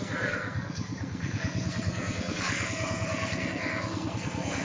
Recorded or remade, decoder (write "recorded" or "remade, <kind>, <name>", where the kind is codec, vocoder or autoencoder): remade, codec, SNAC